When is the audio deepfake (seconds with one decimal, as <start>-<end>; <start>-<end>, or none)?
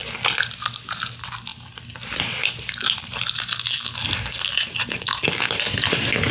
none